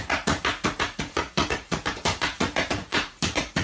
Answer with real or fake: fake